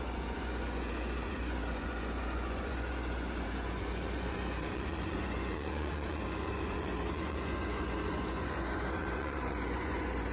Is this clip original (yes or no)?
no